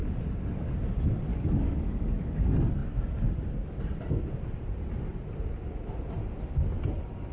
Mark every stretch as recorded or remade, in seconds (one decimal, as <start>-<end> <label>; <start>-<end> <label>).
0.0-1.3 recorded; 1.3-2.4 remade; 2.4-7.3 recorded